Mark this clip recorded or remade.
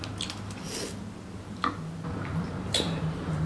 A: recorded